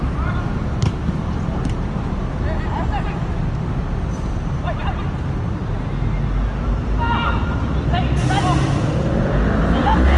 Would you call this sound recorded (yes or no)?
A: yes